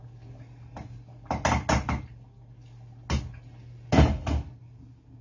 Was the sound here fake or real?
real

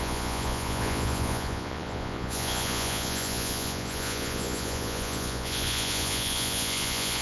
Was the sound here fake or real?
fake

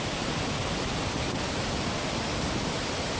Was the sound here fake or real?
real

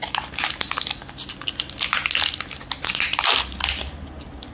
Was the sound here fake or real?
real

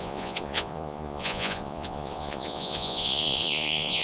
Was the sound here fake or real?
fake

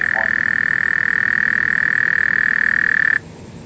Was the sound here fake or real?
real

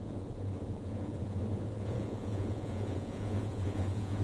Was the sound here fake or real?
fake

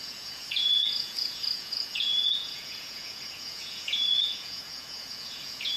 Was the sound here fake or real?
fake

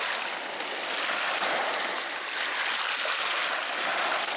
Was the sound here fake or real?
real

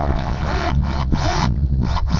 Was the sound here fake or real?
fake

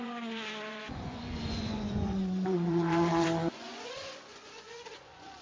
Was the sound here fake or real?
fake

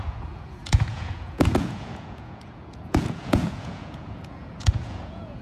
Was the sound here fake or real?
fake